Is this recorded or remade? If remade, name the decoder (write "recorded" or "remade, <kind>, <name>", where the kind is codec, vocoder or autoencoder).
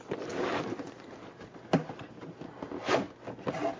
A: recorded